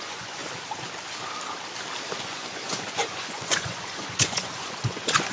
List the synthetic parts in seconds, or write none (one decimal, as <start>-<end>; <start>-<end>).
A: 0.0-0.4; 2.2-5.3